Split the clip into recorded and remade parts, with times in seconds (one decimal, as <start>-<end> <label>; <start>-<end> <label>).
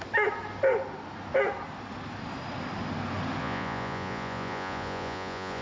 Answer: 0.0-3.4 recorded; 3.4-5.6 remade